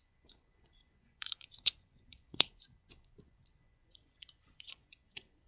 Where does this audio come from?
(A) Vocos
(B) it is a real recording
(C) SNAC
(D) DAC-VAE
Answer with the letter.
A